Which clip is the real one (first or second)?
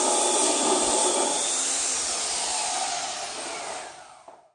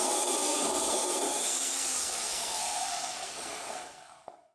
first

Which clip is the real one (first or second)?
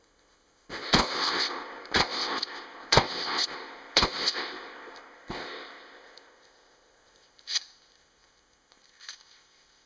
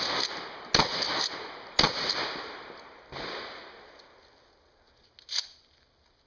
second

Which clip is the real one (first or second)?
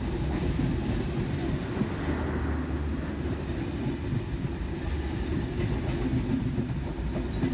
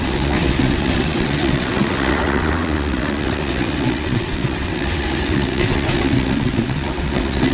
first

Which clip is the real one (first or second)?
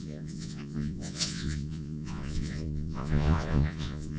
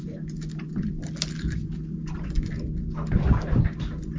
second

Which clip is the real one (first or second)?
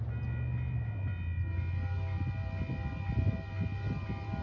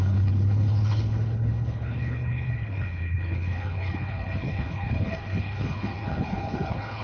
first